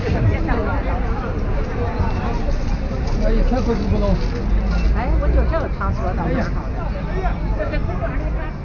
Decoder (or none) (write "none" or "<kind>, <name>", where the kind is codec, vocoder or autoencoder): none